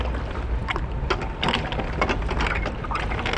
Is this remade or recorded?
recorded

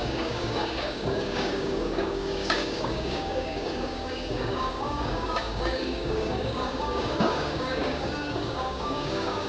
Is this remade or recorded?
remade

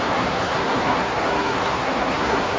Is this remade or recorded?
remade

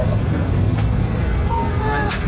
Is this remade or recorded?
remade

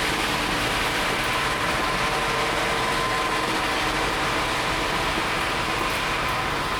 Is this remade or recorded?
recorded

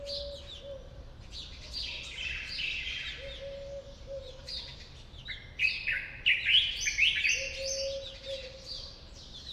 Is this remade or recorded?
recorded